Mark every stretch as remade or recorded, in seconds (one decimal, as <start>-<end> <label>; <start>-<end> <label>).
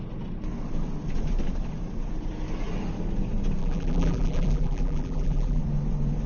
0.0-3.6 recorded; 3.6-5.6 remade; 5.6-6.3 recorded